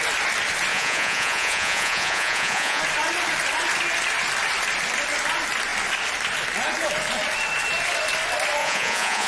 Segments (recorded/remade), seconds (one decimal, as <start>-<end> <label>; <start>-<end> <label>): 0.0-0.7 recorded; 0.7-2.8 remade; 2.8-8.6 recorded; 8.6-9.3 remade